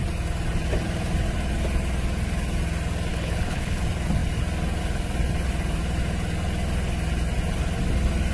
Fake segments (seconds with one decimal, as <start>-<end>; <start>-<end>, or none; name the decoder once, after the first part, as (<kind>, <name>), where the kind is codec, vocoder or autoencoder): 3.1-3.8 (codec, HILCodec)